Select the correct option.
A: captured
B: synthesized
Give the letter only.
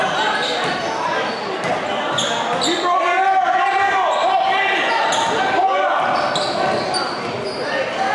A